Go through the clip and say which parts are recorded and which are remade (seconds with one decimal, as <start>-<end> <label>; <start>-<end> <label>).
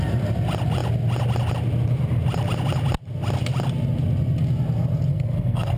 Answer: 0.0-5.1 recorded; 5.1-5.8 remade